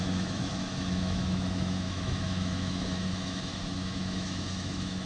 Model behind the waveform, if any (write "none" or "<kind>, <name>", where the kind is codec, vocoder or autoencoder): autoencoder, DAC-VAE